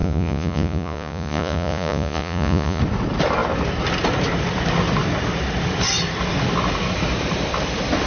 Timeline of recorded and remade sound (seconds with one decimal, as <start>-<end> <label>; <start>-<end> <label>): 0.0-2.8 remade; 2.8-8.1 recorded

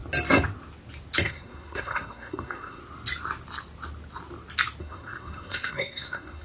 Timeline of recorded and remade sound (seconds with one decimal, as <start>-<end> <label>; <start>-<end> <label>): 0.0-1.2 recorded; 1.2-2.8 remade; 2.8-4.8 recorded; 4.8-6.4 remade